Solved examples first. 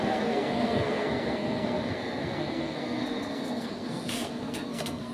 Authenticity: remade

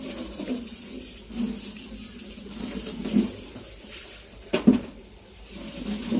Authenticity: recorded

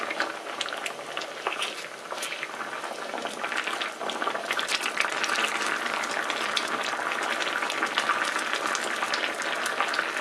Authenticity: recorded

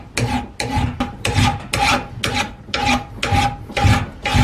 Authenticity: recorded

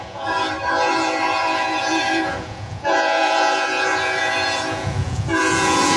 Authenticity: remade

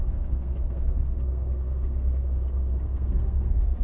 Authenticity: remade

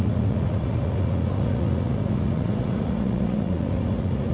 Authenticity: remade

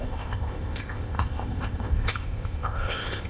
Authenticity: remade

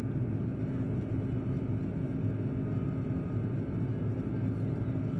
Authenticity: recorded